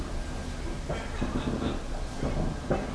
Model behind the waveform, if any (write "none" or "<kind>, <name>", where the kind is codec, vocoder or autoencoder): none